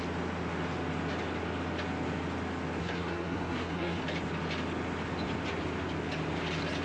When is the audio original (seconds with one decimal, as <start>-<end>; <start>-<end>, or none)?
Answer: 0.0-2.8; 4.0-6.8